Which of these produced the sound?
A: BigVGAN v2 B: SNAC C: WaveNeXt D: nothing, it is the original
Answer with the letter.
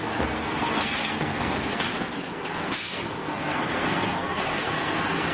B